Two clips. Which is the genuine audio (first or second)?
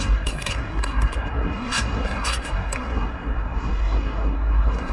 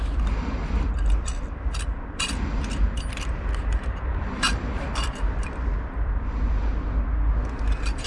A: second